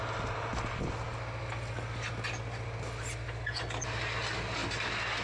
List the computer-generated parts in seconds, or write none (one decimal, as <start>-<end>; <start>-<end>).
none